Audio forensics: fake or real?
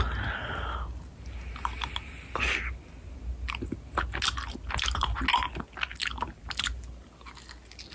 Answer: real